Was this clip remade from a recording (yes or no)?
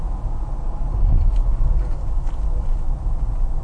no